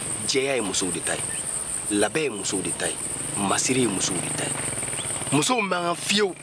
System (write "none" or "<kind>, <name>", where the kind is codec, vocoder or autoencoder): none